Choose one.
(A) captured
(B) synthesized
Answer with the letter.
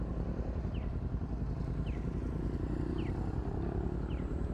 A